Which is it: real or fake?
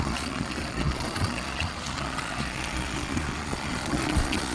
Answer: fake